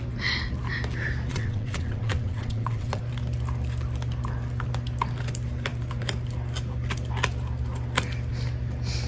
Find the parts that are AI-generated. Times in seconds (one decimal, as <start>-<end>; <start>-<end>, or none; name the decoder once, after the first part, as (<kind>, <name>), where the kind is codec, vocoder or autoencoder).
1.3-3.0 (vocoder, WaveNeXt)